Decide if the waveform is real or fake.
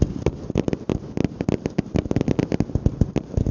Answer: real